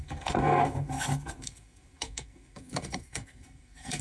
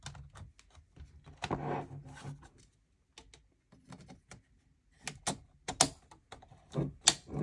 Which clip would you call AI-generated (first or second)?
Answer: first